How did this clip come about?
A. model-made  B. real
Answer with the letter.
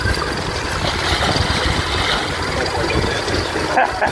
B